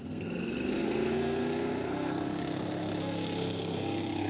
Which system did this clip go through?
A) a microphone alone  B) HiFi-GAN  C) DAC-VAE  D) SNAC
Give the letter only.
D